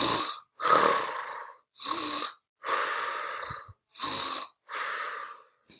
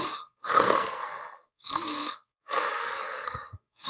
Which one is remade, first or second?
second